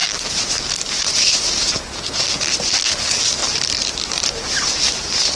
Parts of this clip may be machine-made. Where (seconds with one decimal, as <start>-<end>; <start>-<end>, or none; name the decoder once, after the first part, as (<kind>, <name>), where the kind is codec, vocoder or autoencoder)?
3.4-5.0 (vocoder, BigVGAN v2)